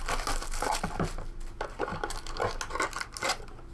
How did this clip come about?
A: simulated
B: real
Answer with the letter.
B